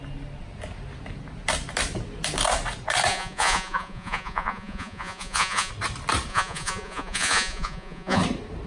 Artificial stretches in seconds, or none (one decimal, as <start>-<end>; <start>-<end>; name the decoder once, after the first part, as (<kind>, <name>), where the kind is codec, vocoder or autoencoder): 3.1-5.7 (vocoder, Vocos); 6.3-8.2